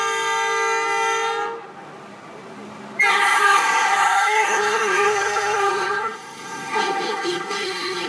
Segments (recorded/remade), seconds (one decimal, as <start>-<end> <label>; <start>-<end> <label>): 0.0-3.1 recorded; 3.1-8.1 remade